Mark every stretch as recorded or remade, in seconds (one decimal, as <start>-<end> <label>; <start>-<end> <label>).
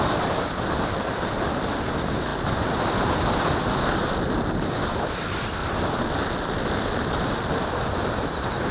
0.0-5.6 remade; 5.6-7.1 recorded; 7.1-8.7 remade